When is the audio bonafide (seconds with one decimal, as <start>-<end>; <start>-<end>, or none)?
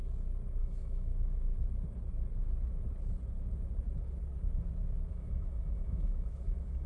0.0-0.6; 1.1-5.1